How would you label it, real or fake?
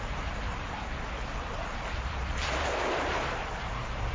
real